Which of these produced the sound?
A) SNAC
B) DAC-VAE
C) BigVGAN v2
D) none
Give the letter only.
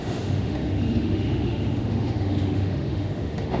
B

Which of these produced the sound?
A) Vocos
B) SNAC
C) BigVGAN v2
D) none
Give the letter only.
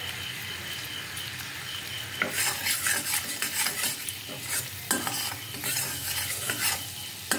D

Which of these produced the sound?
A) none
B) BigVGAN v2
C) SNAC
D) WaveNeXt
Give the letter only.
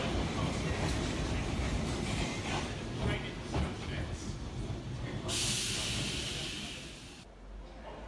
A